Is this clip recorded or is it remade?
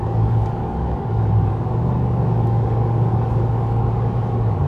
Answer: remade